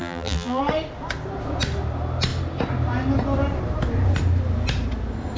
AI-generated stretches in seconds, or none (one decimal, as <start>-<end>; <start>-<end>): 0.0-0.6